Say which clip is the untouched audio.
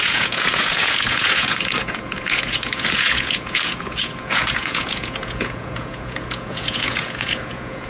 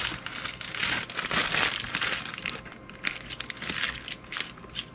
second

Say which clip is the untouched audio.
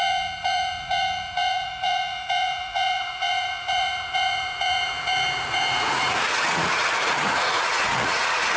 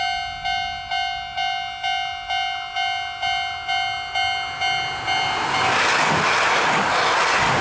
second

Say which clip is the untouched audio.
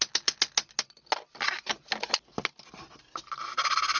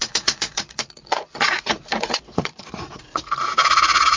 first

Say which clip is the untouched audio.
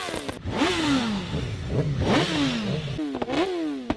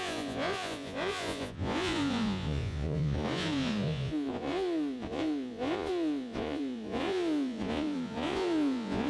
first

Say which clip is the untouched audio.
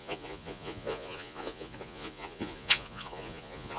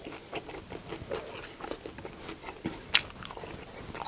second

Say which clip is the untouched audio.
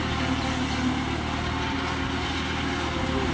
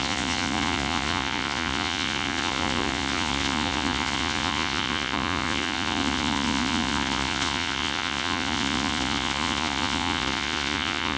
first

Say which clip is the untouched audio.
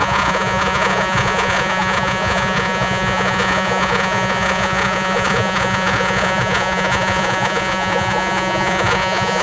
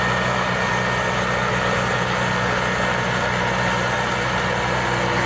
second